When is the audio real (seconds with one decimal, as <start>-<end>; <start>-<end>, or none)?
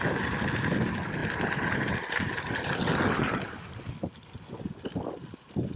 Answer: 0.0-5.8